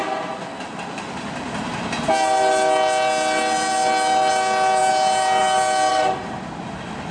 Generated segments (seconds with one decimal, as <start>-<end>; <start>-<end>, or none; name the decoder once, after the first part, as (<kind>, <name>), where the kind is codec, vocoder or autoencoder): 5.9-6.4 (vocoder, BigVGAN v2)